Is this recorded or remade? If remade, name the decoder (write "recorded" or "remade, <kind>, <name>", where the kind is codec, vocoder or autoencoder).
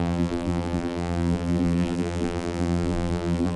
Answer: remade, vocoder, BigVGAN v2